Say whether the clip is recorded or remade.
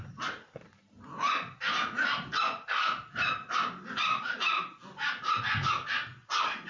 recorded